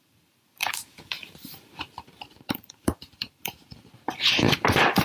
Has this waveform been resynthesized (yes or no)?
yes